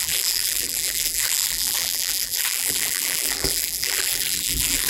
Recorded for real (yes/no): no